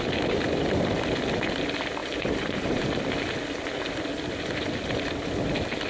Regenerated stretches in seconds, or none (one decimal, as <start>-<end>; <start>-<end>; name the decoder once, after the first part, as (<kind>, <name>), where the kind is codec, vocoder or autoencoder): 2.0-3.0 (vocoder, BigVGAN v2)